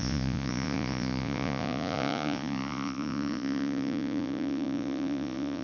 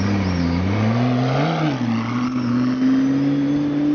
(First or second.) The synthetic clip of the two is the first